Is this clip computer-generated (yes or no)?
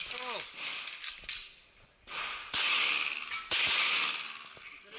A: no